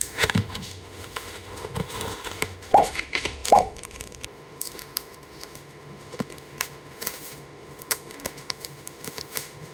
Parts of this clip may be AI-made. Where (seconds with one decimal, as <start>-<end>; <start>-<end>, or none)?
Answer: 0.0-9.7